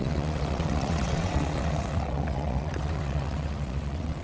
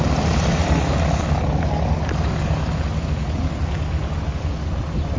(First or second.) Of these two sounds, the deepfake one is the first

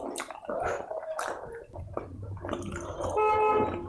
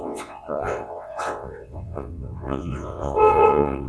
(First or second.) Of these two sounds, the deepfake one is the second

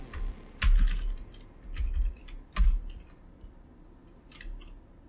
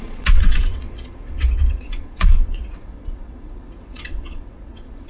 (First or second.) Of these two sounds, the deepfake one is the second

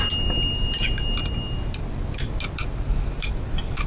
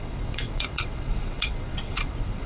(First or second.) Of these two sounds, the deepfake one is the second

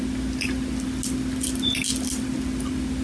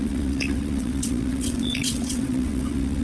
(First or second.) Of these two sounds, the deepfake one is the second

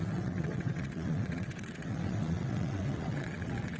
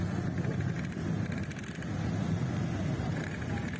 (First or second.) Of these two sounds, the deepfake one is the first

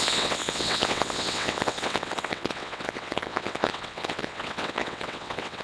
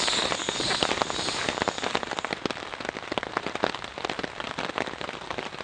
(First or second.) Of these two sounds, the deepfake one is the first